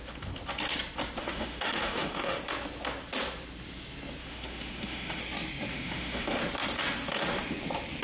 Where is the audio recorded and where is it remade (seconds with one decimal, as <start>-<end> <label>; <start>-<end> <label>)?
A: 0.0-1.2 recorded; 1.2-2.4 remade; 2.4-4.2 recorded; 4.2-5.2 remade; 5.2-5.7 recorded; 5.7-6.4 remade; 6.4-8.0 recorded